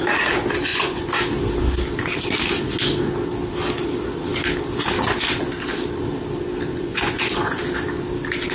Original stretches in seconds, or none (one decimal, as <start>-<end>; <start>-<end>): 0.0-0.7; 1.2-6.7; 7.6-8.5

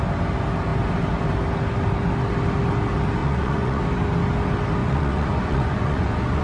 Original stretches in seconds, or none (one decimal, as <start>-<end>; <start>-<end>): 0.0-3.2; 3.8-4.8

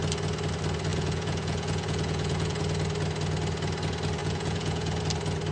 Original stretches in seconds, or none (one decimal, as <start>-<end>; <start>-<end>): 0.0-0.9; 2.6-4.2; 5.0-5.5

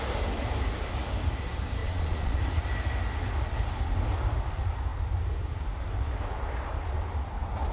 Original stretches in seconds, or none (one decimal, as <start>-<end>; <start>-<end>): 0.0-1.8; 2.4-7.7

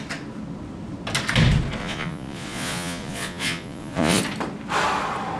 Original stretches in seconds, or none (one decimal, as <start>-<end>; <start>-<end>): 0.0-1.8; 4.2-5.4